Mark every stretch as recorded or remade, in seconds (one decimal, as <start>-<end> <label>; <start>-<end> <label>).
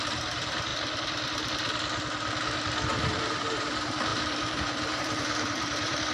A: 0.0-0.7 remade; 0.7-2.9 recorded; 2.9-6.1 remade